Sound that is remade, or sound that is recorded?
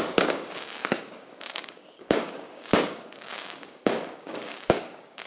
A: remade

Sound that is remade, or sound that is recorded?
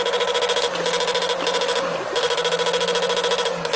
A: recorded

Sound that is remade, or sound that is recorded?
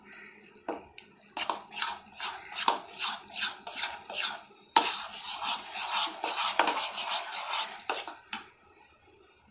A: recorded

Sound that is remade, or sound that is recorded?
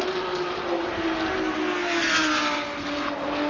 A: recorded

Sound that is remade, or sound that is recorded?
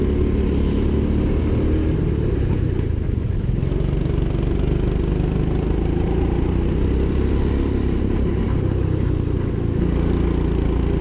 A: recorded